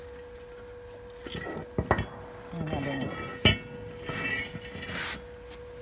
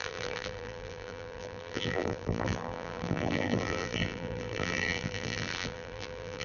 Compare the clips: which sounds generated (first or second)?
second